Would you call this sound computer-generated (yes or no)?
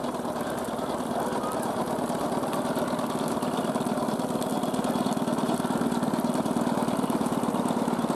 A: no